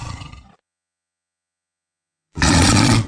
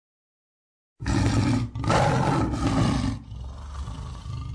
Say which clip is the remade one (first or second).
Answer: first